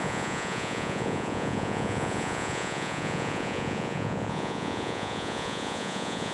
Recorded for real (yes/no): no